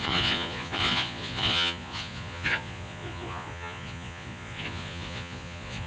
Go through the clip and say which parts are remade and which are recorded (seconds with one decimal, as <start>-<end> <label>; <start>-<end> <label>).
0.0-5.9 remade